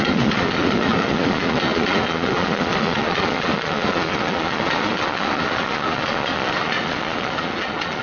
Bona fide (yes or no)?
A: no